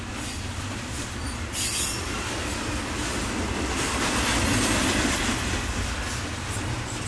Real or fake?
real